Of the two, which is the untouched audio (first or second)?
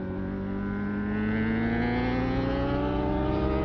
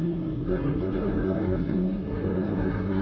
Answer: first